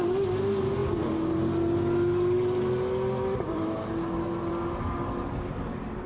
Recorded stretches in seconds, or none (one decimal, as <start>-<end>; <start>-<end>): 0.0-6.1